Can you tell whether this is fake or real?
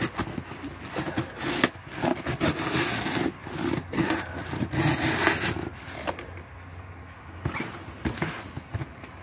real